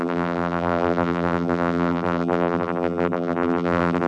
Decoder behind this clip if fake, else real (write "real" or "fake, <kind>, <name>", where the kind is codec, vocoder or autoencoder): fake, vocoder, BigVGAN v2